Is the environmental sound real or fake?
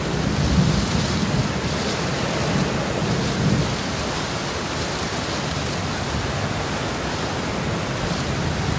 real